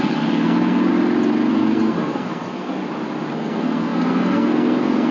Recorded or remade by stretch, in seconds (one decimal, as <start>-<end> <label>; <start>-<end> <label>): 0.0-0.9 remade; 0.9-1.5 recorded; 1.5-2.8 remade; 2.8-3.3 recorded; 3.3-5.1 remade